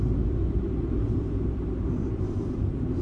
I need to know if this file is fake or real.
fake